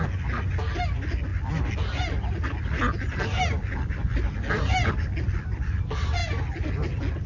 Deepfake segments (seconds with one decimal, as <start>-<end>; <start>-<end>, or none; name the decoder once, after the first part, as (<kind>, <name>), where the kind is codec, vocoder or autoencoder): none